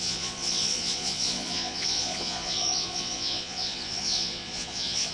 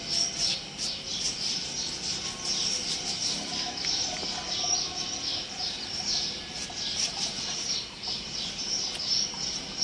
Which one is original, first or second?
second